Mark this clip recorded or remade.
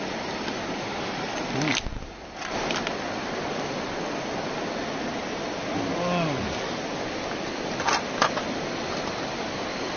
recorded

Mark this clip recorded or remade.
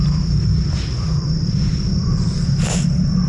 remade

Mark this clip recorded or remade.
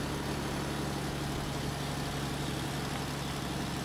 recorded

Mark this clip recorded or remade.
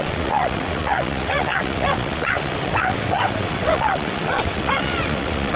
remade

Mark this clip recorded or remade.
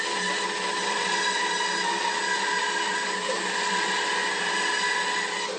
recorded